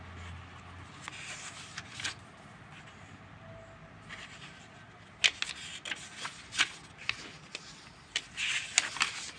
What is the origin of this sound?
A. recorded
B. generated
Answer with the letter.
A